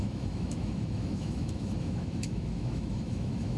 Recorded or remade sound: remade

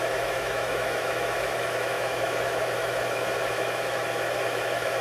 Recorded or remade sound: remade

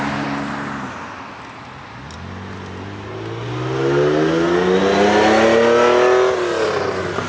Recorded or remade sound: recorded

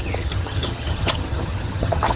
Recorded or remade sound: remade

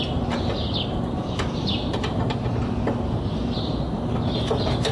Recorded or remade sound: recorded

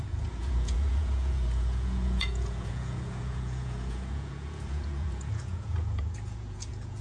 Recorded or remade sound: remade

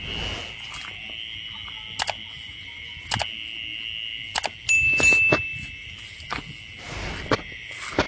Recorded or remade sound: recorded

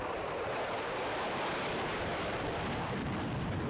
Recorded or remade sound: remade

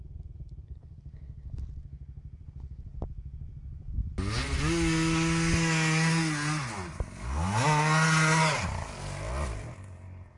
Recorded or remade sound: recorded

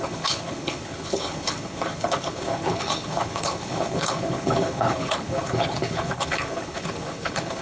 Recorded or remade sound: remade